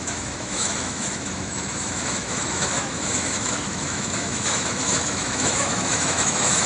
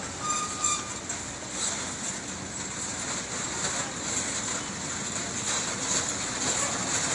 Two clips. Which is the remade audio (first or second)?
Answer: first